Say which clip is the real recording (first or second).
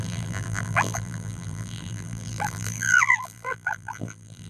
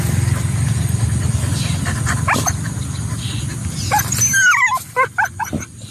second